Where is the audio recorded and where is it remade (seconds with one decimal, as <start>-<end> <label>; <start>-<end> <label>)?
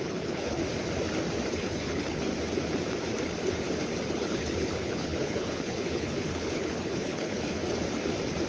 0.0-0.6 remade; 0.6-1.5 recorded; 1.5-2.3 remade; 2.3-4.1 recorded; 4.1-7.6 remade; 7.6-8.5 recorded